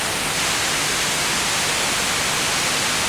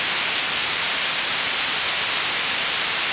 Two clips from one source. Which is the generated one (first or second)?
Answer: second